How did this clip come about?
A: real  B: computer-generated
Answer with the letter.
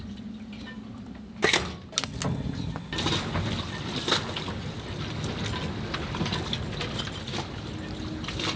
A